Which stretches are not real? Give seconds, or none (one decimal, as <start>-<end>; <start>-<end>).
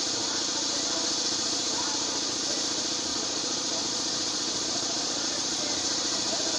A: 3.1-5.6